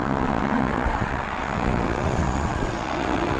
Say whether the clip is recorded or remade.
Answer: remade